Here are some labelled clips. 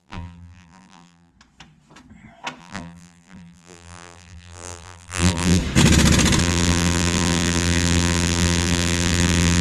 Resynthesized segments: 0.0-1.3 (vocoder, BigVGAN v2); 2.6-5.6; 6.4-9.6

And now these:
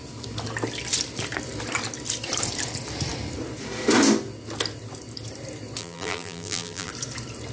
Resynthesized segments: 5.8-6.9 (vocoder, BigVGAN v2)

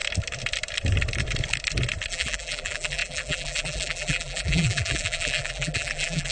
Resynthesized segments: 2.1-6.3 (vocoder, BigVGAN v2)

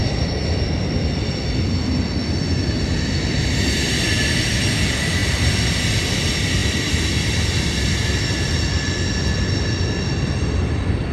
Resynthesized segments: none

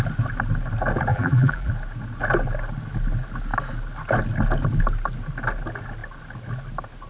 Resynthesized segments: 1.1-1.7 (vocoder, BigVGAN v2)